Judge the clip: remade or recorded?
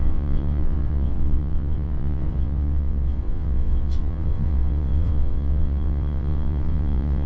remade